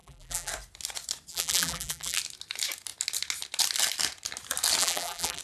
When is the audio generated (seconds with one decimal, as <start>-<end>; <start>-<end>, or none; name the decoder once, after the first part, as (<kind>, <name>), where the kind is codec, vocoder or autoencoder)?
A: 0.0-0.5 (vocoder, BigVGAN v2); 1.3-2.2; 4.8-5.4